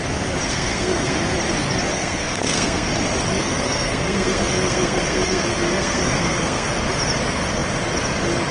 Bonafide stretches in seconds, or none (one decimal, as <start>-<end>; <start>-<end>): 0.0-0.5; 1.2-1.9; 2.9-3.4; 6.7-8.5